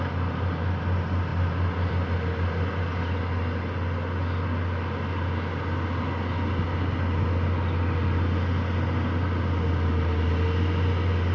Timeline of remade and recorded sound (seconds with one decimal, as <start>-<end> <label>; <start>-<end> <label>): 0.0-11.3 recorded